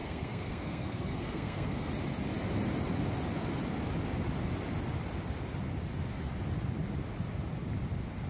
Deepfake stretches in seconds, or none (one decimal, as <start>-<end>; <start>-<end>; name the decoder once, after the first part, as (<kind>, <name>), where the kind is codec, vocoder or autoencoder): 0.0-1.9 (codec, SNAC)